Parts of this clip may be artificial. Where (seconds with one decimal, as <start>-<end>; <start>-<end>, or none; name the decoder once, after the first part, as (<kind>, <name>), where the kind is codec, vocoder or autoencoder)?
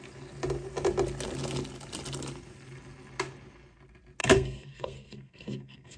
4.2-6.0 (codec, SNAC)